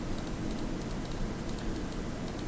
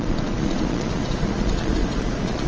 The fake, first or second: second